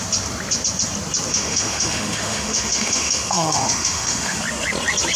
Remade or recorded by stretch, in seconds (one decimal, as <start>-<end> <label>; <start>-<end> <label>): 0.0-1.3 recorded; 1.3-4.4 remade; 4.4-5.2 recorded